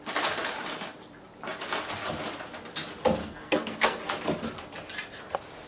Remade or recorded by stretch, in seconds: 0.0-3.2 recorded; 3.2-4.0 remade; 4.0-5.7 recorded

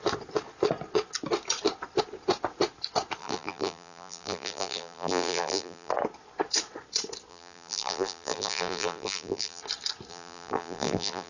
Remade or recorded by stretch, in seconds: 0.0-3.2 recorded; 3.2-5.9 remade; 5.9-7.3 recorded; 7.3-9.6 remade; 9.6-10.1 recorded; 10.1-11.3 remade

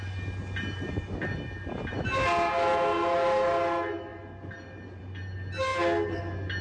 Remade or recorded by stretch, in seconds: 0.0-6.6 recorded

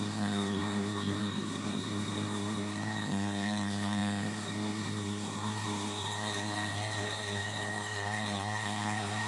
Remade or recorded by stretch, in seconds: 0.0-9.3 remade

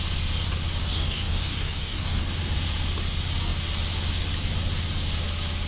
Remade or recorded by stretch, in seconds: 0.0-0.8 recorded; 0.8-2.2 remade; 2.2-5.7 recorded

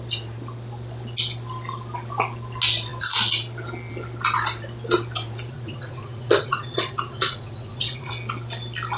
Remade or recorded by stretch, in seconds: 0.0-5.5 recorded; 5.5-8.1 remade; 8.1-9.0 recorded

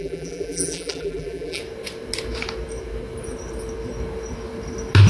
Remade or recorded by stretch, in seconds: 0.0-1.6 remade; 1.6-5.1 recorded

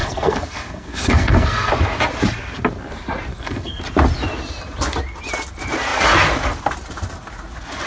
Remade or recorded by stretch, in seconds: 0.0-1.7 remade; 1.7-3.3 recorded; 3.3-3.8 remade; 3.8-7.9 recorded